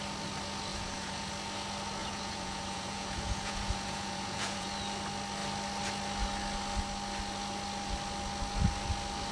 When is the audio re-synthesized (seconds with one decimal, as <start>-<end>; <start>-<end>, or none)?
0.7-1.3; 2.0-4.7